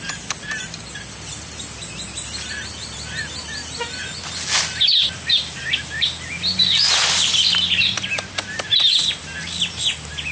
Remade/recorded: recorded